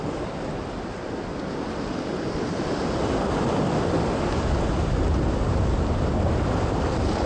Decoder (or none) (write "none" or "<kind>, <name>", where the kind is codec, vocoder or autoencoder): none